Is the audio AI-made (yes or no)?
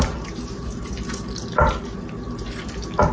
no